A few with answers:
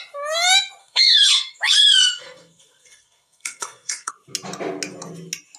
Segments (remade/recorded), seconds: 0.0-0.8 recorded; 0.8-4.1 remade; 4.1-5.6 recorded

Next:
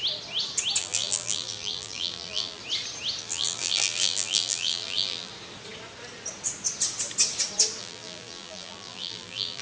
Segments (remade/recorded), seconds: 0.0-0.8 recorded; 0.8-2.6 remade; 2.6-3.2 recorded; 3.2-5.3 remade; 5.3-7.8 recorded; 7.8-9.6 remade

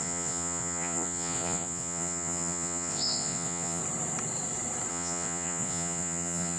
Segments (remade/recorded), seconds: 0.0-3.8 remade; 3.8-4.9 recorded; 4.9-6.6 remade

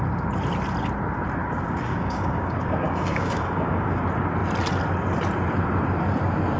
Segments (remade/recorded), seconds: 0.0-1.4 recorded; 1.4-4.0 remade; 4.0-6.6 recorded